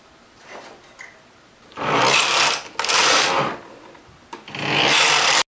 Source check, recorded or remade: recorded